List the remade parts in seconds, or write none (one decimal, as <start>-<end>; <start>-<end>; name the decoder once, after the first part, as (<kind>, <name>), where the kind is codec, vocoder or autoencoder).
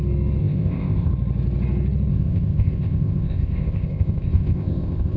0.4-1.1 (codec, ZipCodec); 2.1-5.2